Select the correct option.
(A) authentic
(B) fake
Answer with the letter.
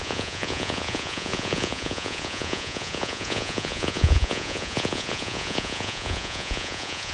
B